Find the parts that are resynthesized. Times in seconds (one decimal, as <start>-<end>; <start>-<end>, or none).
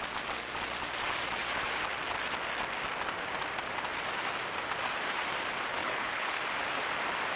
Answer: 5.8-6.4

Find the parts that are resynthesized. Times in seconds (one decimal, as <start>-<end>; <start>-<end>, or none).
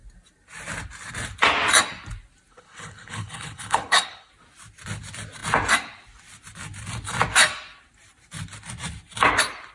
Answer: 2.5-4.3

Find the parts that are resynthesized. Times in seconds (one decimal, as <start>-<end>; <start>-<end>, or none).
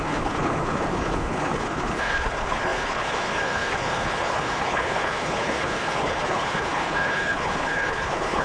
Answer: 0.0-8.4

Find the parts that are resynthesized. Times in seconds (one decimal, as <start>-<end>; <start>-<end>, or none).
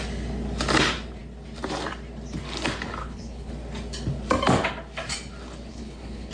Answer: 3.0-3.5; 5.7-6.3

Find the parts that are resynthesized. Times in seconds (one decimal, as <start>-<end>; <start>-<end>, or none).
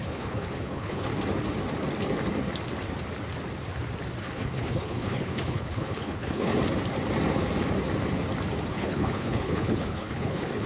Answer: 0.0-1.1; 4.2-6.5; 8.7-10.7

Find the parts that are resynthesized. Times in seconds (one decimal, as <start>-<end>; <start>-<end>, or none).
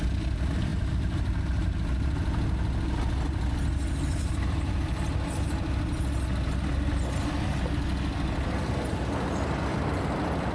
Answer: none